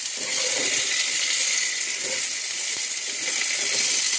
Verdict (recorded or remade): recorded